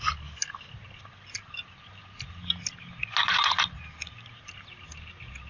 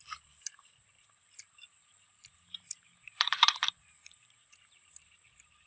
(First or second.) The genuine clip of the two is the first